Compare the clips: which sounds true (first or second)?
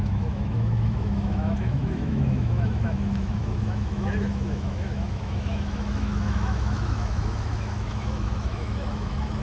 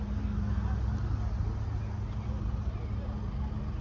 second